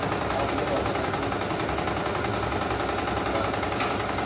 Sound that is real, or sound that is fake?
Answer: real